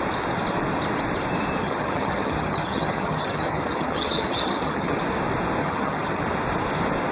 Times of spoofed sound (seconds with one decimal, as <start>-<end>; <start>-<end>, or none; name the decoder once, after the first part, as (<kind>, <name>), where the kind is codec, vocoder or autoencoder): 1.6-5.0 (vocoder, HiFi-GAN); 5.6-6.2